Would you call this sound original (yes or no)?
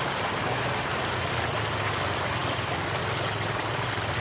yes